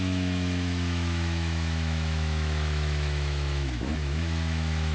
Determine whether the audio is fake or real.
fake